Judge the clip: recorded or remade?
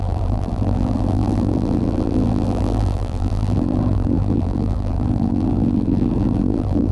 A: remade